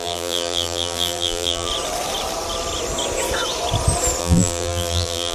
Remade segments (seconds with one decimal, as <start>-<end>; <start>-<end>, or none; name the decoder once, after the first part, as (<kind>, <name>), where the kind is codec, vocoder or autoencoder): 0.0-1.7 (vocoder, BigVGAN v2); 4.2-5.3